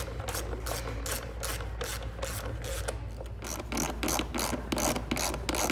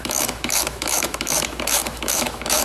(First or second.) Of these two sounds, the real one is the first